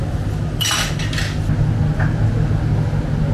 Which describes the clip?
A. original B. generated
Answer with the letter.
A